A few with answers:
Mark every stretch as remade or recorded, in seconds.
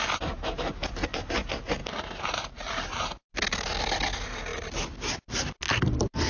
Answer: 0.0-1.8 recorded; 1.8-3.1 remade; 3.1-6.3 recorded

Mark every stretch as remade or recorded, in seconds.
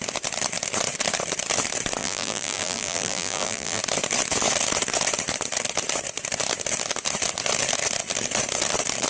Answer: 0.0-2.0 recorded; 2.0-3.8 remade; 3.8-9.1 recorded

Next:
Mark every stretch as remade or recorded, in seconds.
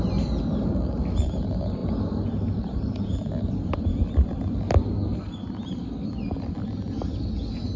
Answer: 0.0-7.8 recorded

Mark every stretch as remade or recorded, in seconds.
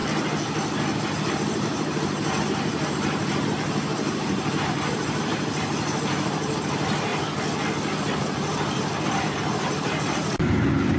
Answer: 0.0-1.3 recorded; 1.3-7.1 remade; 7.1-8.0 recorded; 8.0-11.0 remade